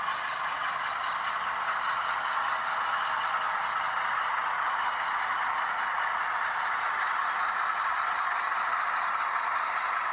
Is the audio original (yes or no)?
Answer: yes